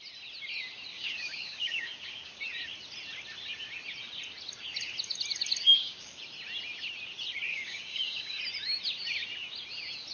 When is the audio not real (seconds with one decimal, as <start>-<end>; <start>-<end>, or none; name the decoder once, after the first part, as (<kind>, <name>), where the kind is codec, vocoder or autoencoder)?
0.9-2.4 (codec, DAC); 5.6-6.2; 7.5-8.4